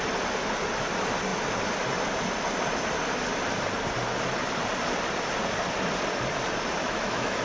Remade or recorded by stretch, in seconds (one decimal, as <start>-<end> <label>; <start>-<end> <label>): 0.0-6.8 recorded; 6.8-7.4 remade